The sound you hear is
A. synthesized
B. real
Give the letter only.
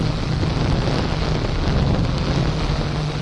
B